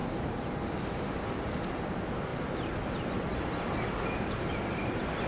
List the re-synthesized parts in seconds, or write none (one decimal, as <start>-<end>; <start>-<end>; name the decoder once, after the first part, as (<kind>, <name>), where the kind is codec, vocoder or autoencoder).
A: none